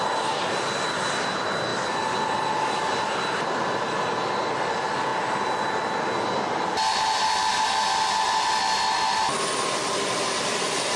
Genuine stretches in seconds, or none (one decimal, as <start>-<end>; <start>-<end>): 0.0-11.0